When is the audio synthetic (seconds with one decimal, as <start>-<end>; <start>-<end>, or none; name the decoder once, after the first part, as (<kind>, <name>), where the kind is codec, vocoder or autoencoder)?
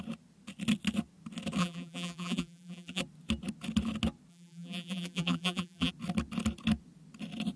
1.6-3.0 (vocoder, BigVGAN v2); 4.3-5.9